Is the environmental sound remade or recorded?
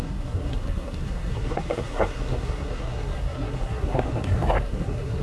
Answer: remade